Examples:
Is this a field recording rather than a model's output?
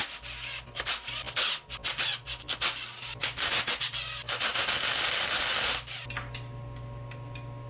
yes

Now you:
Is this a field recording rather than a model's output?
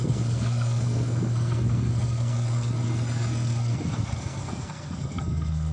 no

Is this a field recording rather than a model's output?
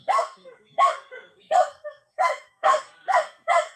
no